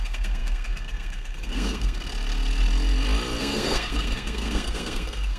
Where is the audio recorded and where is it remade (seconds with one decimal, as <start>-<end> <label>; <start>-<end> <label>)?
0.0-2.1 remade; 2.1-3.4 recorded; 3.4-5.4 remade